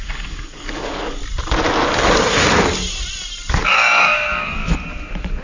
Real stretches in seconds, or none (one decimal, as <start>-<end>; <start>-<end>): 1.2-3.5; 4.6-5.4